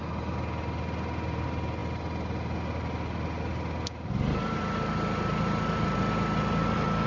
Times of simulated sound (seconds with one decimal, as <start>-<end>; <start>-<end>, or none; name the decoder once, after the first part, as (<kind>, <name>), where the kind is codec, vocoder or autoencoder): none